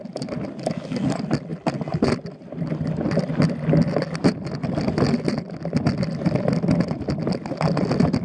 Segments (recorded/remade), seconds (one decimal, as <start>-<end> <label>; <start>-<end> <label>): 0.0-8.2 recorded